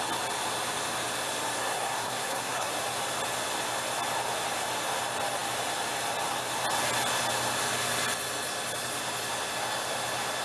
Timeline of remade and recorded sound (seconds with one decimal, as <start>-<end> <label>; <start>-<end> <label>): 0.0-1.6 recorded; 1.6-2.7 remade; 2.7-10.4 recorded